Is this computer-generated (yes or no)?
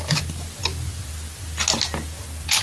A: no